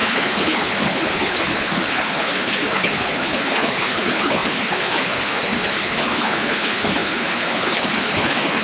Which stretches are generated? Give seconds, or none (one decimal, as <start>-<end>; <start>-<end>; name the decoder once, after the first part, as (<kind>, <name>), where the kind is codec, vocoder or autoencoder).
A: 0.0-8.6 (codec, HILCodec)